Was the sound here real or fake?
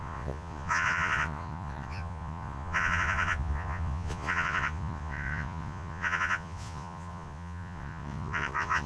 fake